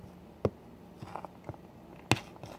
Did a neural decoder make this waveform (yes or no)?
no